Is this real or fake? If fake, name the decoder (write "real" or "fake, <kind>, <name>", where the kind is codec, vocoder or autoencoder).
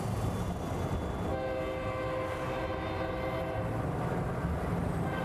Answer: real